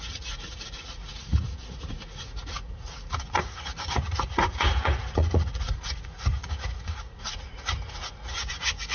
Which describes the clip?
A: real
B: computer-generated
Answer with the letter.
B